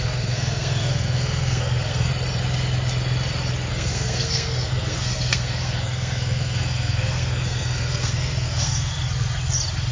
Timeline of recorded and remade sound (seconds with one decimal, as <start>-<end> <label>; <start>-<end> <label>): 0.0-2.1 remade; 2.1-3.7 recorded; 3.7-8.9 remade; 8.9-9.9 recorded

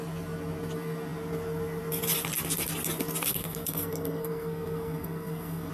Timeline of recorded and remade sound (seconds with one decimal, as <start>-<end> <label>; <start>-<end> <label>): 0.0-3.3 recorded; 3.3-5.7 remade

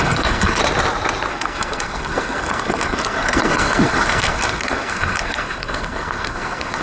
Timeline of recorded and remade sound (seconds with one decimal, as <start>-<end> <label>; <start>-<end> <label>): 0.0-0.6 remade; 0.6-1.3 recorded; 1.3-6.8 remade

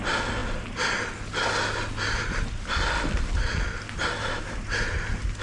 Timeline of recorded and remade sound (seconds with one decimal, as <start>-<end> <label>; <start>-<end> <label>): 0.0-5.4 recorded

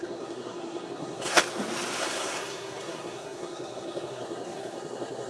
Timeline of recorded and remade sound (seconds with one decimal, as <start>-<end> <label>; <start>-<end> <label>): 0.0-1.4 remade; 1.4-2.0 recorded; 2.0-5.3 remade

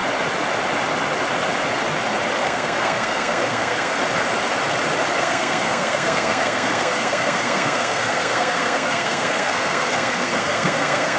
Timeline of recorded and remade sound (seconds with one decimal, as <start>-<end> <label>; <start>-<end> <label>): 0.0-2.4 recorded; 2.4-4.0 remade; 4.0-5.2 recorded; 5.2-11.2 remade

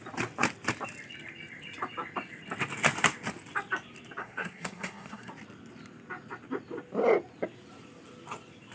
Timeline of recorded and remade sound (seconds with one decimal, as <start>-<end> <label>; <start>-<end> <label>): 0.0-4.2 recorded; 4.2-5.3 remade; 5.3-8.7 recorded